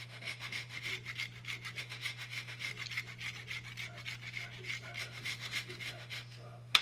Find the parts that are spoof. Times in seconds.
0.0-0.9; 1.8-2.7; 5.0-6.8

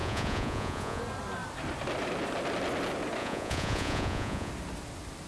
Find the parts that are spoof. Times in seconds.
0.0-1.0; 3.2-4.5

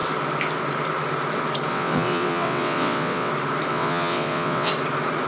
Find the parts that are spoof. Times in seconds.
1.7-3.3; 3.7-4.7

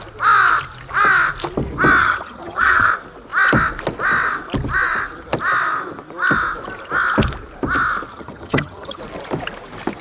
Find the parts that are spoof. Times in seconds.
2.0-2.9; 8.1-9.0

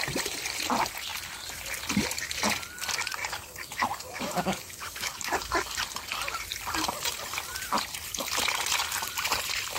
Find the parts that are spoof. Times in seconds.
3.2-5.8

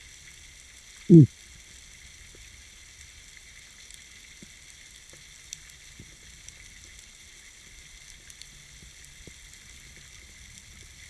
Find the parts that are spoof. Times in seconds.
none

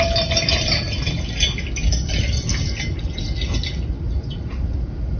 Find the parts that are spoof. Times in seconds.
none